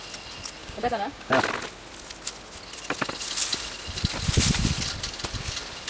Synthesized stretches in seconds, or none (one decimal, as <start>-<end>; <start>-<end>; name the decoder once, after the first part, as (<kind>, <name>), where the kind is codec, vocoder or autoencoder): 0.6-1.3 (codec, DAC)